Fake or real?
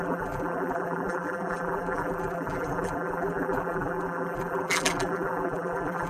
fake